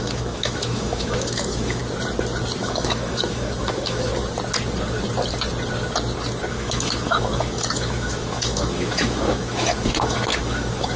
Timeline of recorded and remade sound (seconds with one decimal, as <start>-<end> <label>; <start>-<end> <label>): 0.0-1.8 remade; 1.8-2.6 recorded; 2.6-4.1 remade; 4.1-6.5 recorded; 6.5-11.0 remade